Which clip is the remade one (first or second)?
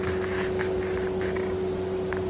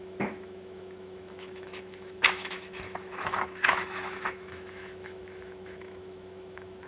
second